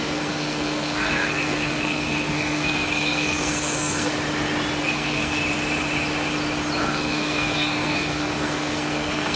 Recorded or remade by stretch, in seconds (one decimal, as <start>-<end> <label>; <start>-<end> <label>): 0.0-4.1 remade; 4.1-4.8 recorded; 4.8-5.4 remade; 5.4-6.8 recorded; 6.8-9.4 remade

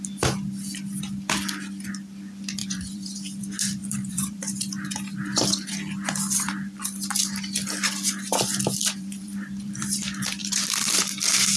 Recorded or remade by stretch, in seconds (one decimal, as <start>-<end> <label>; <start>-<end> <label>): 0.0-2.6 recorded; 2.6-3.4 remade; 3.4-3.8 recorded; 3.8-4.4 remade; 4.4-8.8 recorded; 8.8-10.0 remade; 10.0-10.4 recorded; 10.4-11.0 remade; 11.0-11.6 recorded

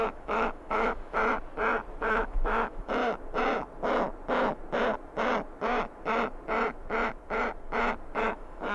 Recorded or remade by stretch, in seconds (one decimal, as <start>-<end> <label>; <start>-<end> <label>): 0.0-1.2 remade; 1.2-2.0 recorded; 2.0-3.0 remade; 3.0-8.2 recorded; 8.2-8.7 remade

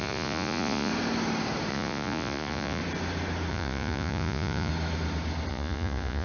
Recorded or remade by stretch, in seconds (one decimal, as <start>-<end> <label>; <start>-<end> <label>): 0.0-0.9 remade; 0.9-1.7 recorded; 1.7-2.8 remade; 2.8-3.5 recorded; 3.5-4.7 remade; 4.7-5.5 recorded; 5.5-6.2 remade

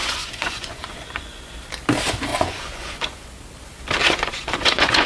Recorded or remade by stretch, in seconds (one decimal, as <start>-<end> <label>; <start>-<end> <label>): 0.0-1.5 remade; 1.5-2.3 recorded; 2.3-3.3 remade; 3.3-4.0 recorded; 4.0-5.1 remade

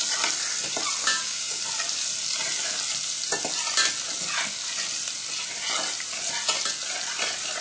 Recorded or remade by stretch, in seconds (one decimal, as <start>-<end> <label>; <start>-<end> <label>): 0.0-1.0 recorded; 1.0-1.6 remade; 1.6-7.6 recorded

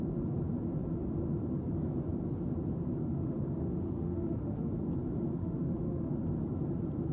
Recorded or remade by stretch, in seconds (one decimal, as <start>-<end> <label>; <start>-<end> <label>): 0.0-3.0 recorded; 3.0-4.7 remade; 4.7-5.4 recorded; 5.4-6.1 remade; 6.1-7.1 recorded